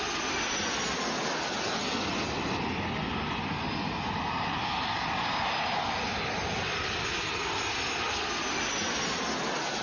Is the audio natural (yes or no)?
yes